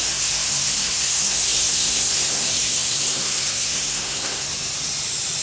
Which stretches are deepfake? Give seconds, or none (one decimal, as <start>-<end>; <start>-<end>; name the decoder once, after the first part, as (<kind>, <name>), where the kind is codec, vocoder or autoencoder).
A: 0.0-4.5 (codec, SNAC)